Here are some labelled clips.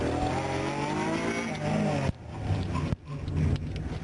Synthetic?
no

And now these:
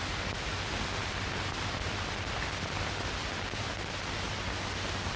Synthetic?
no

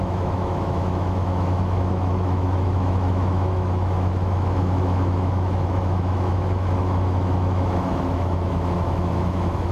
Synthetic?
yes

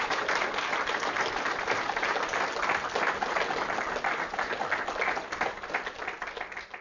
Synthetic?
no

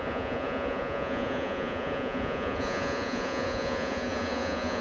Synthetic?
yes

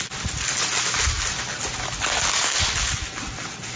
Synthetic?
no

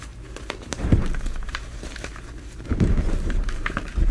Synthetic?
yes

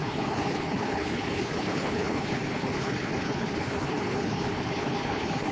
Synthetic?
yes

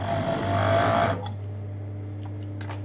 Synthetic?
no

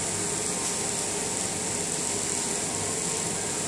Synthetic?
no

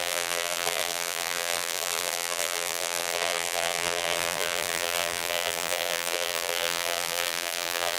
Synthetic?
yes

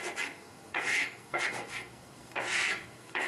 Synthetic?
yes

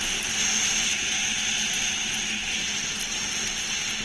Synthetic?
no